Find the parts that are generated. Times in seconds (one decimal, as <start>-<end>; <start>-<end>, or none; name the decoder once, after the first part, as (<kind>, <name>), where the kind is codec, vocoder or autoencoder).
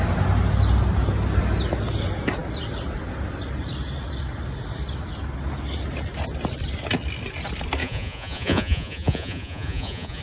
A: 7.8-10.2 (vocoder, Vocos)